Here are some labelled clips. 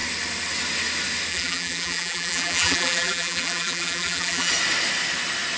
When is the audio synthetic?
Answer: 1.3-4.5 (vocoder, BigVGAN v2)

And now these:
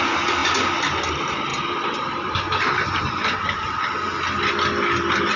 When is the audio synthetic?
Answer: 1.5-3.8 (vocoder, BigVGAN v2)

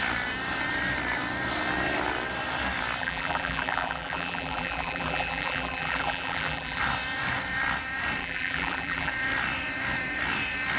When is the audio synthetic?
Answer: 3.0-6.8 (vocoder, BigVGAN v2); 8.2-9.1

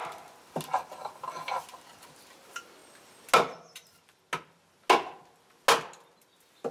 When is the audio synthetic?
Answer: none

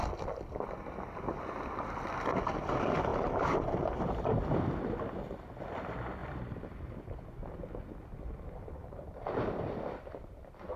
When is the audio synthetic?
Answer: 3.1-4.4 (vocoder, BigVGAN v2); 6.2-6.9; 8.8-9.7

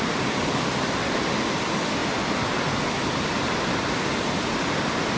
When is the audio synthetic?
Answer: none

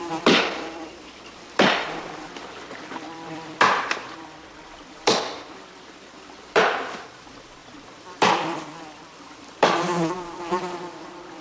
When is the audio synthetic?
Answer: 0.0-11.4 (vocoder, BigVGAN v2)

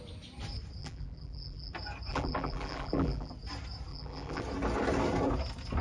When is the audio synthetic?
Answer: 0.8-1.7 (vocoder, BigVGAN v2); 2.1-3.3; 3.9-4.4